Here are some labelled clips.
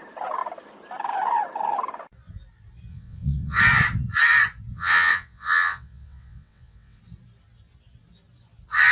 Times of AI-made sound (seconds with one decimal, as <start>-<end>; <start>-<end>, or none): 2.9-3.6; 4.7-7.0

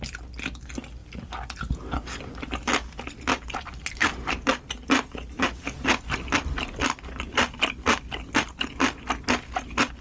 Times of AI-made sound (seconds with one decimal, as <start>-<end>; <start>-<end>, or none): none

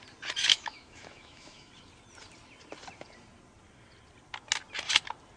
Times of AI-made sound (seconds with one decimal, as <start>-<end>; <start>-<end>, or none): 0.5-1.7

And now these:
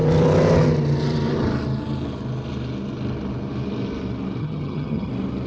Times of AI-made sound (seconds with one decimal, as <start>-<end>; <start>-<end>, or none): 4.4-5.1

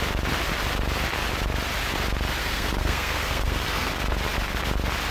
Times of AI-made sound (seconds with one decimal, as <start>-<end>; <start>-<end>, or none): 2.4-3.9

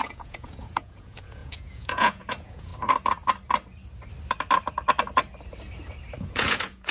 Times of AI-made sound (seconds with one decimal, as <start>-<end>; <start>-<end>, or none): 0.0-2.7; 6.2-6.9

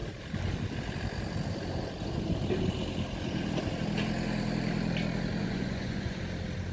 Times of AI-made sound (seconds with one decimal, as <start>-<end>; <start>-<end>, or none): 5.4-6.2